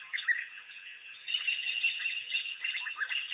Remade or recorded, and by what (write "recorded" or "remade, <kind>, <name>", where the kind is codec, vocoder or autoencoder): recorded